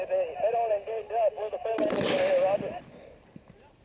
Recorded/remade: recorded